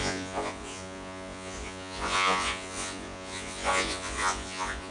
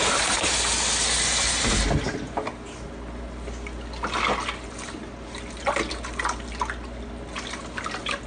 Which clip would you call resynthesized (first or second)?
first